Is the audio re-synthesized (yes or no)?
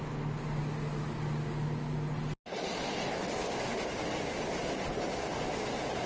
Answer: no